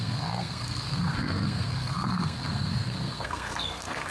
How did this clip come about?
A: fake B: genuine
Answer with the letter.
A